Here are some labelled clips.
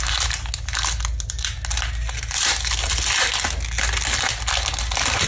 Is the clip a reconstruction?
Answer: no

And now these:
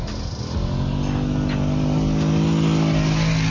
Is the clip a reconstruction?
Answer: no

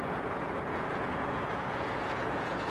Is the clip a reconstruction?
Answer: yes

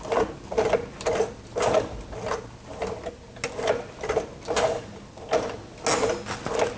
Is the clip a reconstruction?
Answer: no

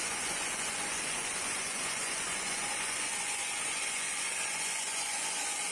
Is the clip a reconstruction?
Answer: yes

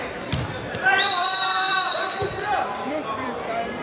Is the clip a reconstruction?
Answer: yes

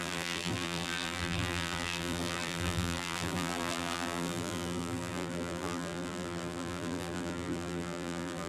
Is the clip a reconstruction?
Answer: yes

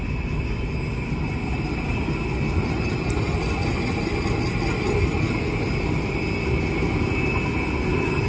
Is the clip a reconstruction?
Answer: no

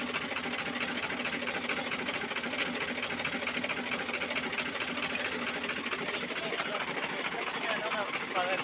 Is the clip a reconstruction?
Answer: no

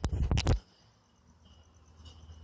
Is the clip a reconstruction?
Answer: no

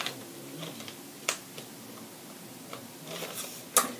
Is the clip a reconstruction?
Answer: no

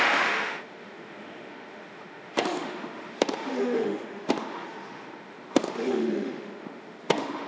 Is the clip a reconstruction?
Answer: yes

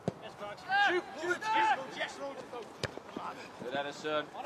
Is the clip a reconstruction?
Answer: no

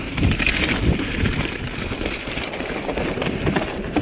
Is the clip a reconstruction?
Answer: yes